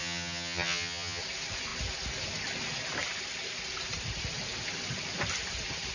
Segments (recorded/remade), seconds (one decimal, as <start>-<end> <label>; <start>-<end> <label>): 0.0-1.2 remade; 1.2-5.9 recorded